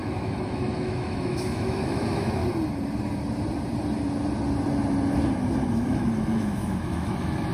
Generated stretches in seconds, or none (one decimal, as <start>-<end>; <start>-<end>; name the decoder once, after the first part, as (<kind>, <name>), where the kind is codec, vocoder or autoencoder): 0.0-2.4 (autoencoder, DAC-VAE); 5.7-7.5

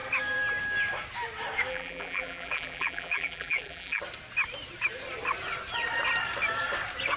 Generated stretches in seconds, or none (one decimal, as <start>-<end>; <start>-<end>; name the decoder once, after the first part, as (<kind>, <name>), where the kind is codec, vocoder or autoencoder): 1.7-4.0 (vocoder, BigVGAN v2)

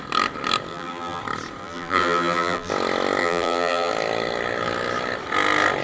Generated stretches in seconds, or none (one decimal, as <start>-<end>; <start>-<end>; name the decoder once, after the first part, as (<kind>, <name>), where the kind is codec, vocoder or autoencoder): 0.7-1.2 (vocoder, BigVGAN v2); 1.6-2.7; 3.2-3.9

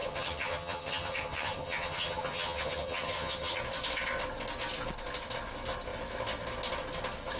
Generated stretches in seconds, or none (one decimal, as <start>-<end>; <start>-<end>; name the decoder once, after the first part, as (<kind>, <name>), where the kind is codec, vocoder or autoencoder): 0.0-3.6 (vocoder, HiFi-GAN)